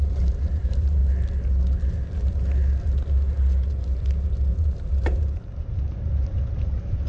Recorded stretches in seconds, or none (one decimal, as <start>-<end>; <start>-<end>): 1.0-4.6